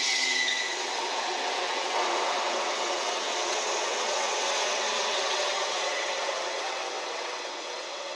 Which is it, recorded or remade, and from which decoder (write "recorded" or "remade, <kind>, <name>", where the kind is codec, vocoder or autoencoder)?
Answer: remade, vocoder, WaveNeXt